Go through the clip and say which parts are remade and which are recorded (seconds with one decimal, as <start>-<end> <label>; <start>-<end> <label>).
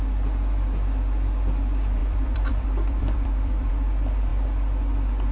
0.0-2.0 recorded; 2.0-3.7 remade; 3.7-5.3 recorded